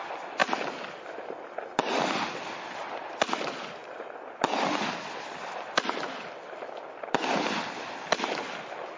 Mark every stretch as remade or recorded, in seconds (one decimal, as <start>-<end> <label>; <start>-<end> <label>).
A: 0.0-9.0 recorded